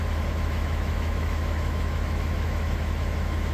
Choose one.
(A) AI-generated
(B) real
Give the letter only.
A